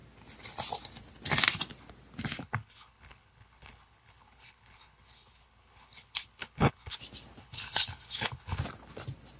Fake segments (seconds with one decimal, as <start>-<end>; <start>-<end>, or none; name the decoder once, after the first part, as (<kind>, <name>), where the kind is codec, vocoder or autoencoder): 2.4-7.0 (codec, HILCodec); 7.4-8.6